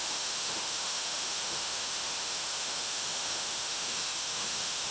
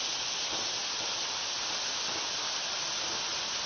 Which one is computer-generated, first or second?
first